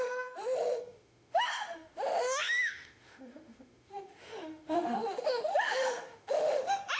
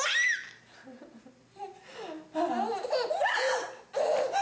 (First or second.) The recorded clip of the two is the second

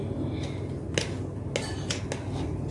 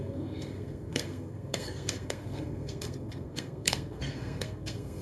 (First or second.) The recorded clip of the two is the first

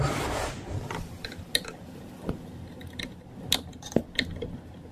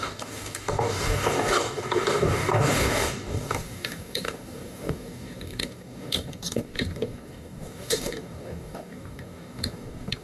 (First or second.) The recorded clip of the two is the first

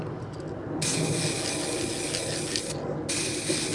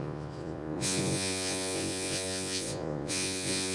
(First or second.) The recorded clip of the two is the first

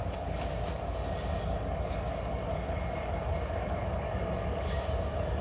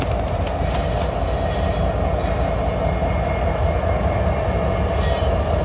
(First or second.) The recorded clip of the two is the second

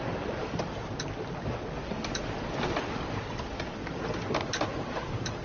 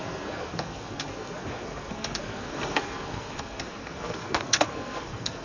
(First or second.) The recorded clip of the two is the first